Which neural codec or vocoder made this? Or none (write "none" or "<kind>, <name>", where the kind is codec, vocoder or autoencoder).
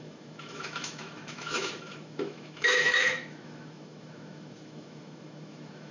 autoencoder, DAC-VAE